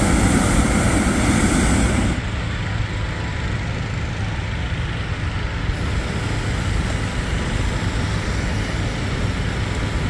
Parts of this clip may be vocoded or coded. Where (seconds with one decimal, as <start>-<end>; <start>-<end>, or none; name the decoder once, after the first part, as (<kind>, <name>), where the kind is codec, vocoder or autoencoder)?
none